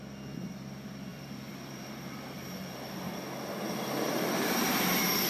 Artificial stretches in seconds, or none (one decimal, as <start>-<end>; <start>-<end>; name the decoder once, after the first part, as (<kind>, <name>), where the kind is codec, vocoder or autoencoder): 1.1-3.2 (vocoder, BigVGAN v2)